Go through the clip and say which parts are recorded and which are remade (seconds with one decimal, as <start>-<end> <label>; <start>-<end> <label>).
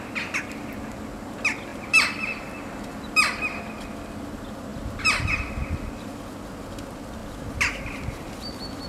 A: 0.0-8.9 recorded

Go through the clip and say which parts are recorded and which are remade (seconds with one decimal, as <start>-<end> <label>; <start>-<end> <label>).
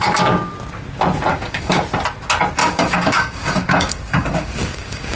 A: 0.0-1.3 recorded; 1.3-1.8 remade; 1.8-2.6 recorded; 2.6-5.2 remade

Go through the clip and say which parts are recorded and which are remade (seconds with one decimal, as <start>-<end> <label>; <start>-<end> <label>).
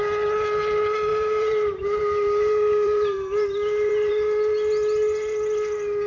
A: 0.0-1.1 recorded; 1.1-4.1 remade; 4.1-6.1 recorded